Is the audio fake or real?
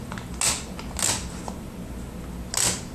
real